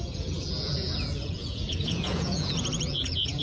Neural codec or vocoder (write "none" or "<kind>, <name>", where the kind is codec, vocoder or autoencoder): vocoder, Vocos